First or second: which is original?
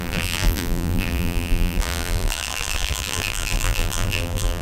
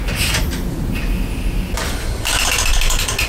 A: second